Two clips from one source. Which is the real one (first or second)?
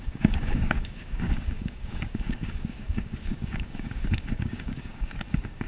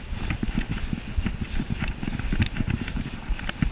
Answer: second